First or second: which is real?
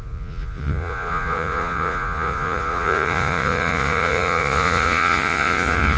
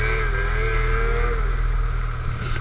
second